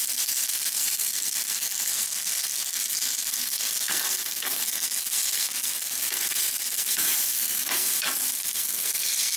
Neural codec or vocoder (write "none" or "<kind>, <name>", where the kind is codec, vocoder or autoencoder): codec, SNAC